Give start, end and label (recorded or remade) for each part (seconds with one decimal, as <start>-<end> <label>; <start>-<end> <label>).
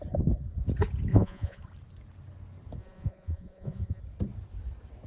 0.0-1.1 recorded; 1.1-1.6 remade; 1.6-2.8 recorded; 2.8-4.0 remade; 4.0-5.1 recorded